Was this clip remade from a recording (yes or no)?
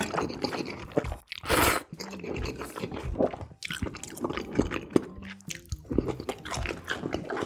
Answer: no